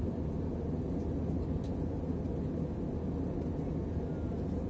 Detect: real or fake real